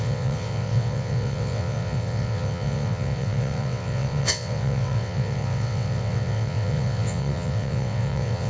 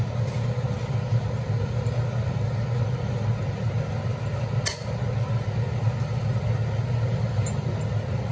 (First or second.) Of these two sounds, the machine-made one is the first